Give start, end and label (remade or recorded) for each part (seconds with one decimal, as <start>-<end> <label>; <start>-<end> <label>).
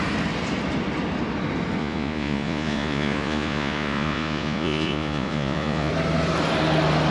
0.0-1.8 recorded; 1.8-5.9 remade; 5.9-7.1 recorded